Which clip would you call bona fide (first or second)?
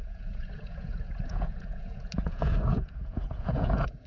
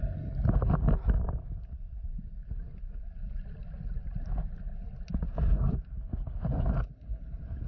second